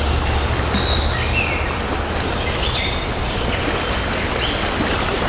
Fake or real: real